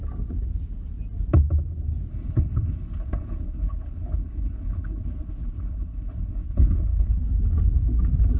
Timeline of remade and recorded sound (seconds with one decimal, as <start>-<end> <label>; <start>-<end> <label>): 0.0-2.1 recorded; 2.1-7.1 remade; 7.1-8.4 recorded